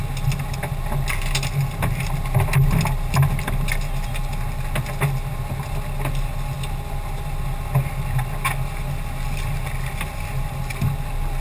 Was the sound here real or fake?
real